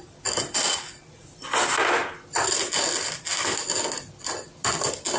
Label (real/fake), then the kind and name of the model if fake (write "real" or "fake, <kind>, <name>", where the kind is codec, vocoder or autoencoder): real